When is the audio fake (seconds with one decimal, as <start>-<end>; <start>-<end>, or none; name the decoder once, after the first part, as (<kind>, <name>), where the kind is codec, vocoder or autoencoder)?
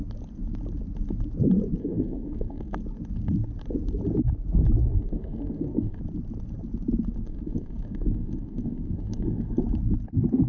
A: 1.8-2.8 (codec, SNAC); 4.9-6.0; 7.1-9.6